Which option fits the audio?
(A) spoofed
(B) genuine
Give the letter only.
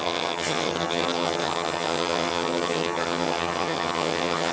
A